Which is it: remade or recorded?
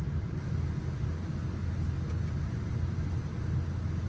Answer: recorded